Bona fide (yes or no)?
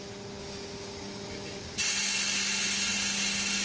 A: yes